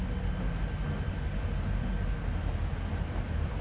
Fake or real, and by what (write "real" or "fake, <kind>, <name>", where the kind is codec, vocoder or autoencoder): real